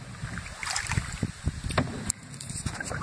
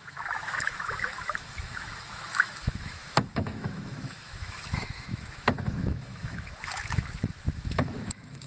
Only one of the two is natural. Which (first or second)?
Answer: first